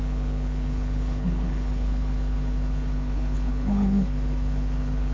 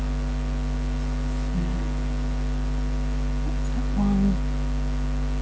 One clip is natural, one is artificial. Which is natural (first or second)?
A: second